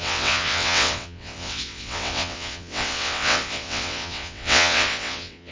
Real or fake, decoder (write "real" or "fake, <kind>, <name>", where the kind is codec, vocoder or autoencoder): fake, vocoder, WaveNeXt